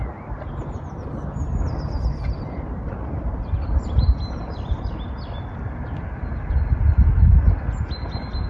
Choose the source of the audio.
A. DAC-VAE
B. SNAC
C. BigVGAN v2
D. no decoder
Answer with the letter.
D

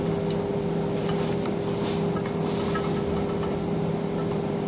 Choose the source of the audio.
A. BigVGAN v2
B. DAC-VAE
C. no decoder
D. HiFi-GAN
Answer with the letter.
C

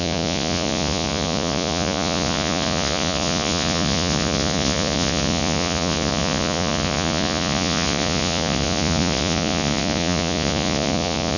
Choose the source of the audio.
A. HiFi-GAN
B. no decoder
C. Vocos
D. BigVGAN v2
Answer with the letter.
C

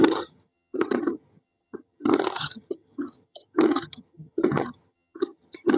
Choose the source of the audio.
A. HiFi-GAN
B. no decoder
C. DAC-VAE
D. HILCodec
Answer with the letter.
A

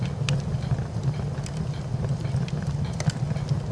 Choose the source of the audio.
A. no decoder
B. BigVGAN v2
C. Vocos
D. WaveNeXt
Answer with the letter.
A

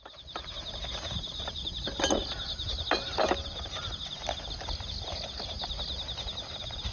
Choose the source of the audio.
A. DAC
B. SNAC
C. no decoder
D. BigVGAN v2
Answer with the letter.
C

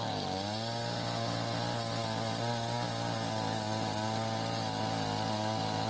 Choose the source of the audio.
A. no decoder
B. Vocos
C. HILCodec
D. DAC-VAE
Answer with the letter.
A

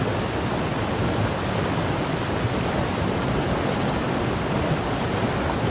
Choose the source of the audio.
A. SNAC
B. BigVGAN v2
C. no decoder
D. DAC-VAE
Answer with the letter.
C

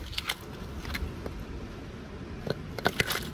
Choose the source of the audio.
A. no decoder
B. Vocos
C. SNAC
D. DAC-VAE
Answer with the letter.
A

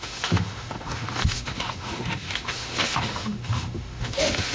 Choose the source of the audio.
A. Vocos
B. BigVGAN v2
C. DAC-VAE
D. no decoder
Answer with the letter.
C